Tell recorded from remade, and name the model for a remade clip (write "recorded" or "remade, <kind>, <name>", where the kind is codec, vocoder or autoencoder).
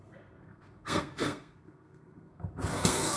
remade, codec, SNAC